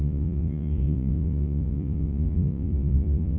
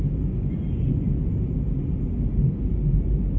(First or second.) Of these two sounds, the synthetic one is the first